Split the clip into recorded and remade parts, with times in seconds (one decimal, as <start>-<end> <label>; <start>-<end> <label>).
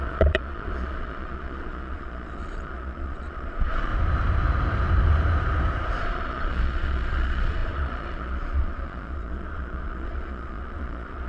0.0-3.9 remade; 3.9-6.0 recorded; 6.0-11.3 remade